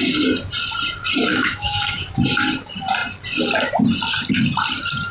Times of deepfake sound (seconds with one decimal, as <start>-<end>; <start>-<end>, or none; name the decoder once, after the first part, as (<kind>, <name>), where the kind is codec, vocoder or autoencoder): 1.3-2.2 (autoencoder, DAC-VAE)

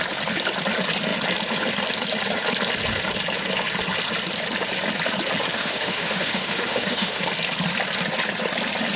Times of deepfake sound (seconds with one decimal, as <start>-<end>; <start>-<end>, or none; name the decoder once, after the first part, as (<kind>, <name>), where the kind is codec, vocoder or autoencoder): 5.5-7.2 (autoencoder, DAC-VAE)